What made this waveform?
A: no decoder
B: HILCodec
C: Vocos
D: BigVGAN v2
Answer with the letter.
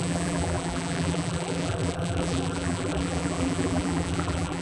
D